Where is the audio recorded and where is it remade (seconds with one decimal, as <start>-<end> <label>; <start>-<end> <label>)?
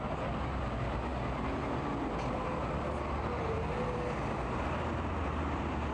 0.0-5.9 recorded